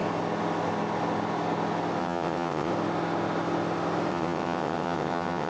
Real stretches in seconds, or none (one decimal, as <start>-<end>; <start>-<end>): 0.0-2.0; 2.7-4.1